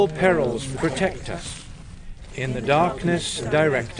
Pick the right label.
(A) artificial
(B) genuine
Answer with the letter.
B